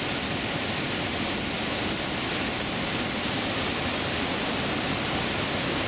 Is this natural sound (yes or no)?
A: yes